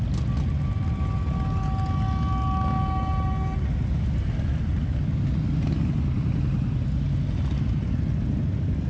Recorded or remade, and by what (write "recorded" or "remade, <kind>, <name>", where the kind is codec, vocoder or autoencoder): recorded